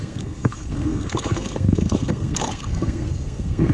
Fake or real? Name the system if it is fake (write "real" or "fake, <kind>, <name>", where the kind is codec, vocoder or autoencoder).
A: fake, codec, SNAC